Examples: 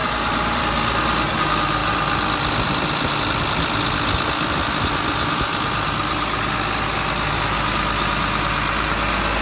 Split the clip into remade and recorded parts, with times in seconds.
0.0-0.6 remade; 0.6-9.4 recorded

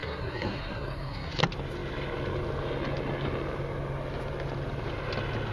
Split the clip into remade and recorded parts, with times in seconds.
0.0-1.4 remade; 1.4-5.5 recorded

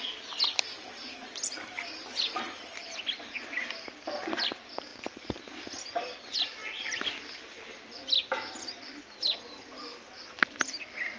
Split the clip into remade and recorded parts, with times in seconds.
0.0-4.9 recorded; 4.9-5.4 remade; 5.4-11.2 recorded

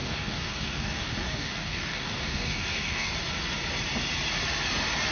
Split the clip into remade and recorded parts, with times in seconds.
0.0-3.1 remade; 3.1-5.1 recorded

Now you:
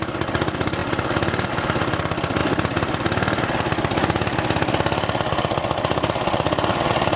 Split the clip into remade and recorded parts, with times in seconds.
0.0-7.2 recorded

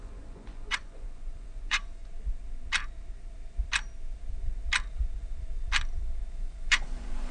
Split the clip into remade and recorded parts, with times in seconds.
0.0-2.0 remade; 2.0-6.3 recorded; 6.3-7.3 remade